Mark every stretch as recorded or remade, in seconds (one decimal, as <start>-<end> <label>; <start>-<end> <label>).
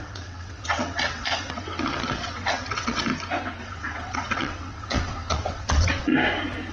0.0-3.1 remade; 3.1-3.6 recorded; 3.6-6.1 remade; 6.1-6.7 recorded